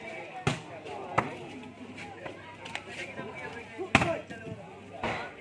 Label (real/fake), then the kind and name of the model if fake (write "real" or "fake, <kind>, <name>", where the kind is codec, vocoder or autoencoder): real